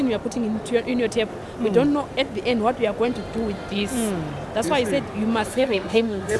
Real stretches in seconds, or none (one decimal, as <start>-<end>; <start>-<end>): 0.0-5.5